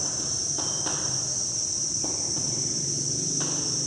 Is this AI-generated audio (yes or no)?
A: no